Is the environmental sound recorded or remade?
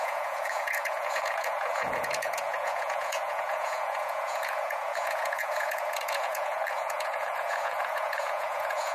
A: remade